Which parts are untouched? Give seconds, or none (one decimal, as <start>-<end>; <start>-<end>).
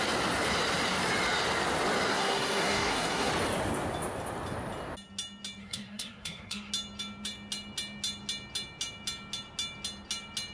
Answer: 0.0-2.1; 3.3-5.6; 6.7-10.5